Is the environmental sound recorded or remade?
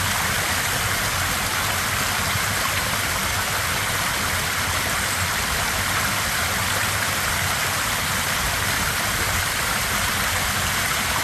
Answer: recorded